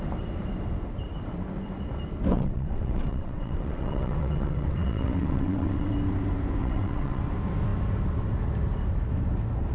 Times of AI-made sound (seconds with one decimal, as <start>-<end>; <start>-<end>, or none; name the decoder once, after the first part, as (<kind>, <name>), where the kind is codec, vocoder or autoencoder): 2.3-5.9 (vocoder, WaveNeXt); 6.6-7.2

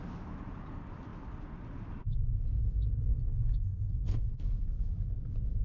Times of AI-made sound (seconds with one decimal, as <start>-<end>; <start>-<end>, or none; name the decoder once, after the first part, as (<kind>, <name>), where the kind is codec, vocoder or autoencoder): 3.1-4.2 (codec, SNAC)

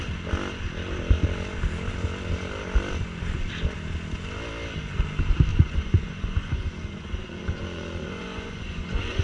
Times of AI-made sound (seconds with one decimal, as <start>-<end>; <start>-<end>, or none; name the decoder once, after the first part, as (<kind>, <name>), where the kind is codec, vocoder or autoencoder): 5.5-9.2 (vocoder, Vocos)

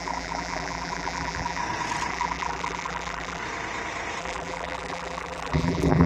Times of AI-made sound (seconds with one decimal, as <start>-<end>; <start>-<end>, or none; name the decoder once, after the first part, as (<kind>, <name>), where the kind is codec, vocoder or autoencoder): 0.0-1.6 (vocoder, BigVGAN v2); 2.1-3.4; 4.2-6.1

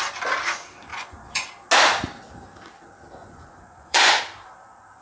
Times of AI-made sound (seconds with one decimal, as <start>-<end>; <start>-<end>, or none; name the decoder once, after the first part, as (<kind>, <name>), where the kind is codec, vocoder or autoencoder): 0.9-1.5 (vocoder, Vocos); 3.2-4.2